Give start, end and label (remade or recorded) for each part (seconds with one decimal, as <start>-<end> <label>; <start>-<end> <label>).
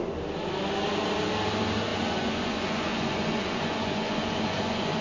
0.0-1.9 recorded; 1.9-5.0 remade